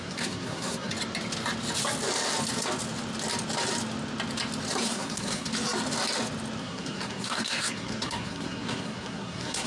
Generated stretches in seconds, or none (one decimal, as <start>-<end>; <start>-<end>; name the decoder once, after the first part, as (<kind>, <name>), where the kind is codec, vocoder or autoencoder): 0.0-0.9 (codec, SNAC); 4.8-5.5; 6.6-9.7